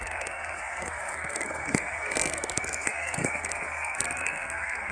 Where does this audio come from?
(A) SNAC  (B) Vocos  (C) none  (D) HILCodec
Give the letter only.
A